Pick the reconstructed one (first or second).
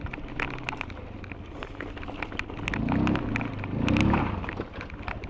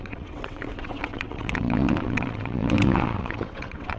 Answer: second